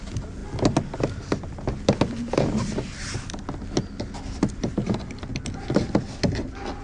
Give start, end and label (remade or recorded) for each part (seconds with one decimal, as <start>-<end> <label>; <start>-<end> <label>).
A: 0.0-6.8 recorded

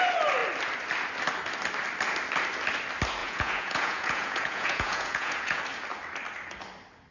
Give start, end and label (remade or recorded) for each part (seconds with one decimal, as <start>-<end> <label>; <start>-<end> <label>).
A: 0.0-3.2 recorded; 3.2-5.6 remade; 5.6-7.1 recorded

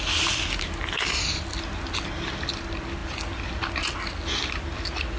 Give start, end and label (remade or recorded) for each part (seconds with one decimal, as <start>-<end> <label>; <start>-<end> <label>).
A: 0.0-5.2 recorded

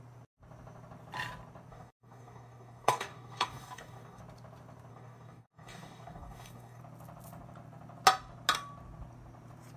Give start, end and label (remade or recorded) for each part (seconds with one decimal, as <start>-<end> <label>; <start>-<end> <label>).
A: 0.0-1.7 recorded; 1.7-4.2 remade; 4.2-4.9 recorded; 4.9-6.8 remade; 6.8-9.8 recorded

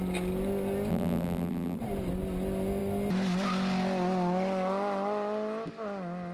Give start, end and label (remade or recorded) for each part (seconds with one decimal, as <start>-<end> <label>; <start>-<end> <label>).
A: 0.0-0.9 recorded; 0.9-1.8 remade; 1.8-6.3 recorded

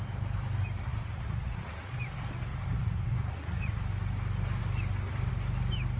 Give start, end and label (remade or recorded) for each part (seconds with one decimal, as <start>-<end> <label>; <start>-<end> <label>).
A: 0.0-0.9 recorded; 0.9-1.6 remade; 1.6-2.5 recorded; 2.5-3.8 remade; 3.8-6.0 recorded